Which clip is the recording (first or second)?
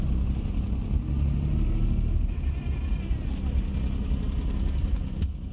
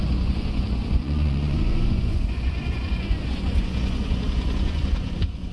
first